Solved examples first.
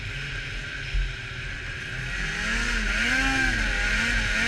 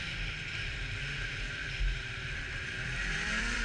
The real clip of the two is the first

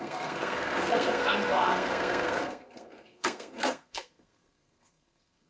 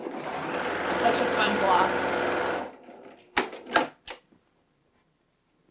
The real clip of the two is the second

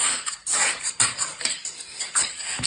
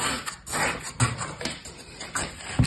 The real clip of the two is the second